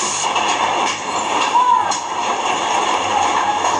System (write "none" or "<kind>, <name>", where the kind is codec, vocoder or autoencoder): vocoder, BigVGAN v2